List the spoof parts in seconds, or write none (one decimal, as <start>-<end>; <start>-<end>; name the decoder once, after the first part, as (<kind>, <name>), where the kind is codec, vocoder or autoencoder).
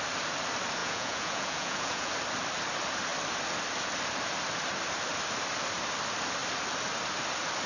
0.8-2.1 (vocoder, Vocos)